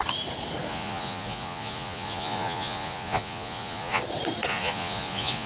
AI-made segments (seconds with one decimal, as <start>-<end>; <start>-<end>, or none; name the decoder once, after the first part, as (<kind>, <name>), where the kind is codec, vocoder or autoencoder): 0.7-4.0 (vocoder, Vocos); 4.5-5.5